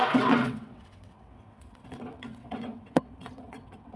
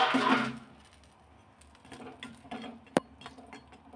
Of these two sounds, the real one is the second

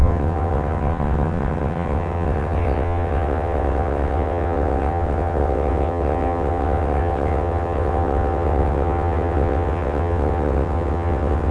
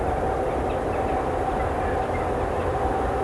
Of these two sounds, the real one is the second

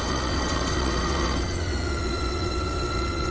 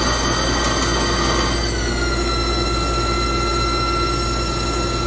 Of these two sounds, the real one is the second